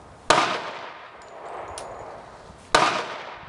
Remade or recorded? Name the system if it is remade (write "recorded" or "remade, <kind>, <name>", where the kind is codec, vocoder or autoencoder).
recorded